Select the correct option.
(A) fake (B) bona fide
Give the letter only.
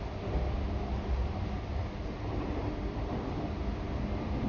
B